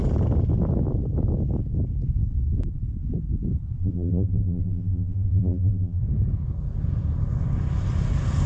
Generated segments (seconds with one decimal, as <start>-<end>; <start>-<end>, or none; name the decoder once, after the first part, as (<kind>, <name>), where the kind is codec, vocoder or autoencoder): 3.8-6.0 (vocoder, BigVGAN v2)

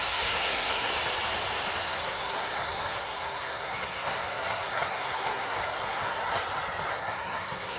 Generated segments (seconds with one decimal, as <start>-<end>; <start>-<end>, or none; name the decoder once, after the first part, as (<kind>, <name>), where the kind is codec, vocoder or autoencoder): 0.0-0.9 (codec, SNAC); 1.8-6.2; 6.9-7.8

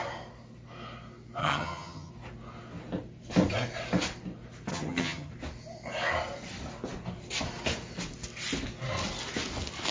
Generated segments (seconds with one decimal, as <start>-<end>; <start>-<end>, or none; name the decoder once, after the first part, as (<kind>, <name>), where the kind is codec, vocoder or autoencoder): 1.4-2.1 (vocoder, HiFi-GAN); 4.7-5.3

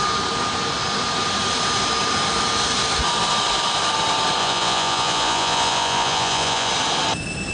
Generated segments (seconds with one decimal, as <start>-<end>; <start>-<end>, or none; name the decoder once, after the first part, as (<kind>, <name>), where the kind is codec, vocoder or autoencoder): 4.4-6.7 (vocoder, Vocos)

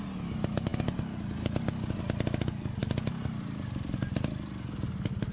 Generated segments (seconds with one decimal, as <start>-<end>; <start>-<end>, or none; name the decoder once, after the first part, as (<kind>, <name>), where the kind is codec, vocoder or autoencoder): none

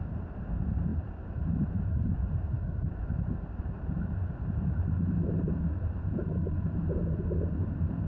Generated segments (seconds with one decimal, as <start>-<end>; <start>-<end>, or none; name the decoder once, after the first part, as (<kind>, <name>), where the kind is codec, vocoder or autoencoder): 0.0-7.0 (vocoder, BigVGAN v2); 7.5-8.1